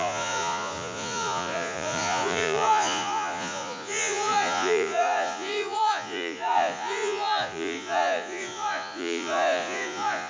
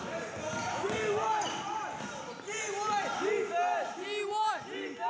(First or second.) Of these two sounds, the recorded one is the second